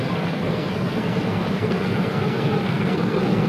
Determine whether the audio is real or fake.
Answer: fake